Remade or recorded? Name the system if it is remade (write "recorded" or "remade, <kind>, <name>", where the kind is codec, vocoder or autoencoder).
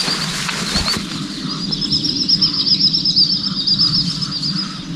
recorded